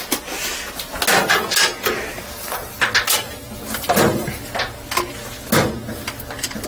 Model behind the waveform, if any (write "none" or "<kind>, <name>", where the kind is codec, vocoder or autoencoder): none